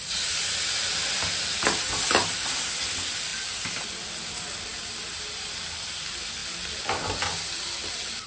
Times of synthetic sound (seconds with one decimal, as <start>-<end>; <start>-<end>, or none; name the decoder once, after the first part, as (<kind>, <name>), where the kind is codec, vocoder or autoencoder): none